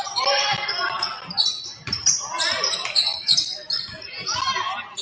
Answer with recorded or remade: remade